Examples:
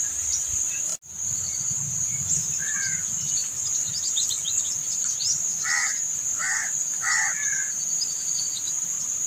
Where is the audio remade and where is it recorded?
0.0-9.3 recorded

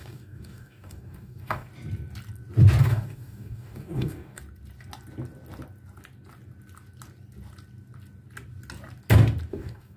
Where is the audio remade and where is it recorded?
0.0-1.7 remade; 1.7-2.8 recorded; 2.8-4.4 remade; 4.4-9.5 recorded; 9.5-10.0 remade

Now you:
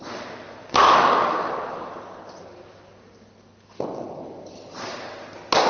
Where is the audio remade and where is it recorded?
0.0-0.6 recorded; 0.6-1.4 remade; 1.4-5.7 recorded